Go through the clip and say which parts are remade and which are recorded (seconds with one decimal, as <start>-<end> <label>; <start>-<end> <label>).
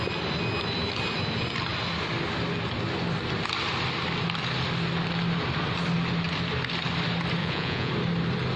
0.0-7.4 recorded; 7.4-7.9 remade; 7.9-8.6 recorded